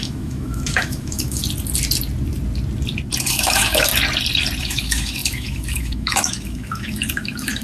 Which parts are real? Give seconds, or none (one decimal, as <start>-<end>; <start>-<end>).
1.4-3.2; 3.9-4.6